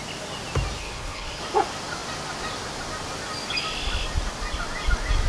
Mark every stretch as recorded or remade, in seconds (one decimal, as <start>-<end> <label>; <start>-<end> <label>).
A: 0.0-0.8 recorded; 0.8-1.4 remade; 1.4-5.3 recorded